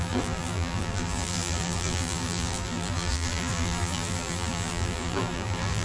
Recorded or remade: remade